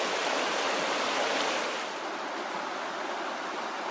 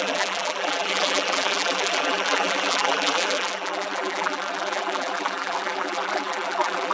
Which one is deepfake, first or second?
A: second